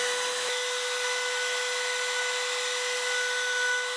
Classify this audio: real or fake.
real